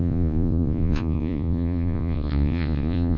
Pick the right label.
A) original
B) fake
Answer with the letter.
B